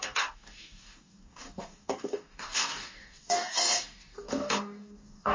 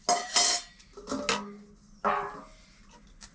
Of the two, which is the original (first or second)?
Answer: second